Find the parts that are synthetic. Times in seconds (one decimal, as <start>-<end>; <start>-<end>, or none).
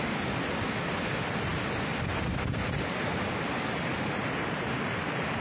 none